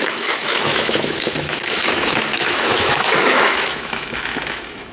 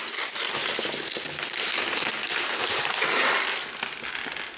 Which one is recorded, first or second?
second